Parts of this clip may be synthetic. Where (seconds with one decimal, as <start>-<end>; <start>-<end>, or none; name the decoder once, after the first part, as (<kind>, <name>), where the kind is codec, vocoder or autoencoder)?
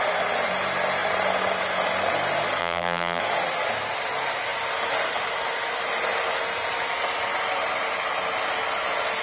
2.6-3.2 (vocoder, BigVGAN v2)